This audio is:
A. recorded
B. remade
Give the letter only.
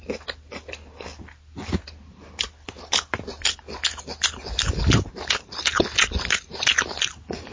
A